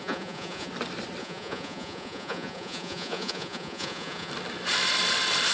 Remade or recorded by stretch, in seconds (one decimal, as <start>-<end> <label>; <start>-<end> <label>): 0.0-0.7 remade; 0.7-1.2 recorded; 1.2-4.3 remade; 4.3-5.5 recorded

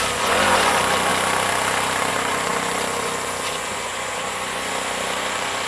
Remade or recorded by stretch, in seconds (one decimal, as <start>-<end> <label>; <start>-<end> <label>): 0.0-1.1 remade; 1.1-2.1 recorded; 2.1-5.7 remade

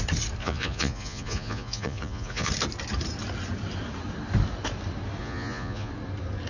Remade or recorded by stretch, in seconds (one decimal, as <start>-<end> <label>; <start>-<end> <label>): 0.0-0.4 recorded; 0.4-2.5 remade; 2.5-5.2 recorded; 5.2-5.9 remade; 5.9-6.5 recorded

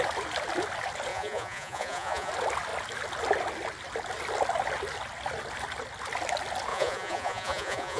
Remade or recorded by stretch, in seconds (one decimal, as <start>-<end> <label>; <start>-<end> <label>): 0.0-1.1 recorded; 1.1-2.3 remade; 2.3-6.7 recorded; 6.7-8.0 remade

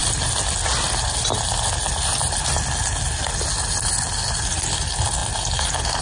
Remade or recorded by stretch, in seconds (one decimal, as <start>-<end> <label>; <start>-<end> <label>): 0.0-6.0 recorded

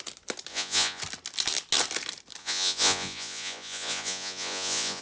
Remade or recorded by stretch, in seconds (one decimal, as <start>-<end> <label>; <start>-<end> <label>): 0.0-0.5 recorded; 0.5-1.0 remade; 1.0-2.4 recorded; 2.4-5.0 remade